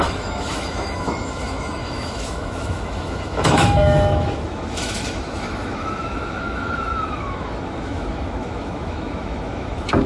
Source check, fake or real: fake